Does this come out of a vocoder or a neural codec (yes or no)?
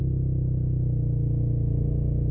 no